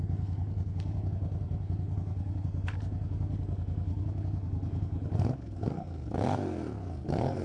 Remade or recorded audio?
remade